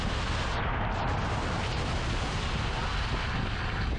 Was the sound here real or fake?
real